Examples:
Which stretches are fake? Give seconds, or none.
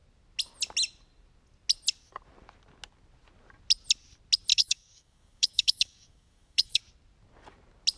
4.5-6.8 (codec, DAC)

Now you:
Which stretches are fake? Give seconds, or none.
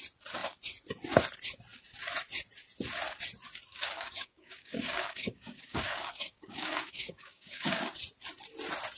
3.7-8.0 (codec, DAC)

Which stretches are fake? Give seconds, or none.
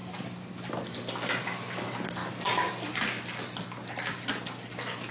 none